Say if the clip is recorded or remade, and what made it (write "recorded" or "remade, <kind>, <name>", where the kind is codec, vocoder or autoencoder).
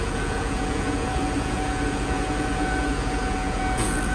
remade, vocoder, Vocos